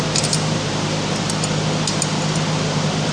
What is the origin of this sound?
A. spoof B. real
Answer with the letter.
B